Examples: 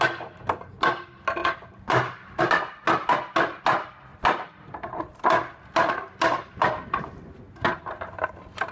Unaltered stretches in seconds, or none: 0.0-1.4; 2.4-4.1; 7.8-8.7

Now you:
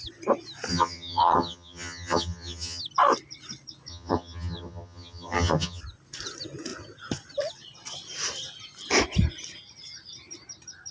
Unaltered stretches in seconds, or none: 0.0-0.7; 2.8-3.9; 5.8-10.9

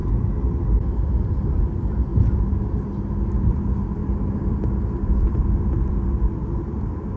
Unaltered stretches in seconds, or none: 0.0-1.3; 2.1-3.1

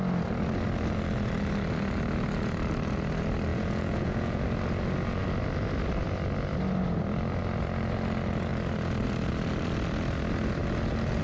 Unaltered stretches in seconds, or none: 0.0-3.5; 4.4-11.2

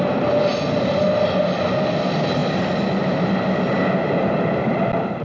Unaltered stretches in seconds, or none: 0.0-5.2

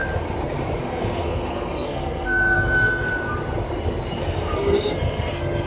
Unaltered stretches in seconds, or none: 0.0-0.8; 3.1-4.2

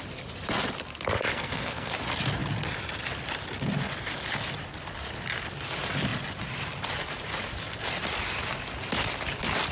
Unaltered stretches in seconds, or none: 0.0-1.3; 1.9-9.7

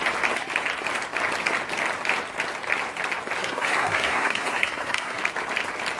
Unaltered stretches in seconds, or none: 0.0-3.4; 5.2-6.0